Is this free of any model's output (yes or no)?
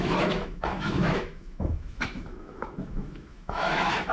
no